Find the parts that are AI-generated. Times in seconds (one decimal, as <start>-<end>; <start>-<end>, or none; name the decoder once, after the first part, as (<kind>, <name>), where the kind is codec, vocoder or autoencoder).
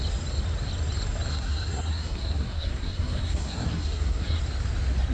1.3-4.4 (codec, SNAC)